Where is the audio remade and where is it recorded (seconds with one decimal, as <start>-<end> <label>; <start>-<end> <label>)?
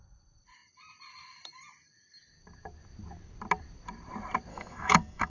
0.0-4.5 recorded; 4.5-5.3 remade